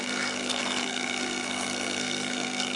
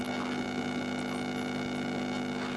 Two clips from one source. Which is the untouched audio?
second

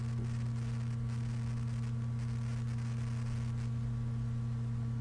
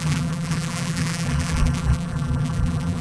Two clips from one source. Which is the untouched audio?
first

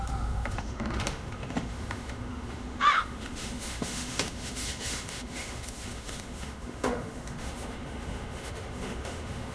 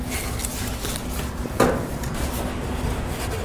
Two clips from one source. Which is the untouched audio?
second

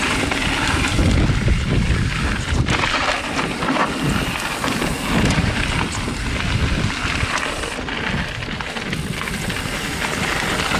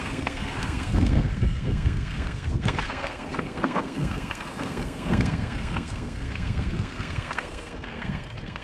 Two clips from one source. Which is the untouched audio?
first